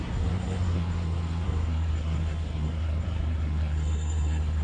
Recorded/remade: remade